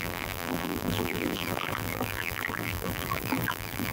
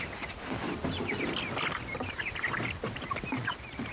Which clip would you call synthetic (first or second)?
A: first